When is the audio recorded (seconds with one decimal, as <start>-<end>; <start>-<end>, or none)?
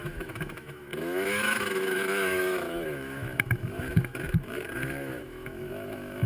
none